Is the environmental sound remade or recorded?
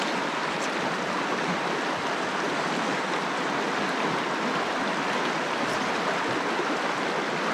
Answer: recorded